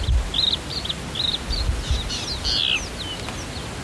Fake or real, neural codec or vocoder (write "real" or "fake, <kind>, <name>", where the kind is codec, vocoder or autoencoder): real